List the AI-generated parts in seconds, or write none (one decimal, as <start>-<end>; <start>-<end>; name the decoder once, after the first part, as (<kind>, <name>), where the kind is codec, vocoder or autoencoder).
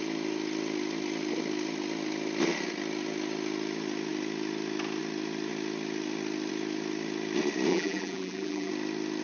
7.7-8.7 (vocoder, BigVGAN v2)